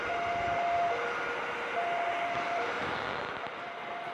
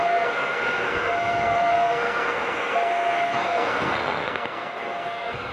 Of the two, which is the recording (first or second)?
first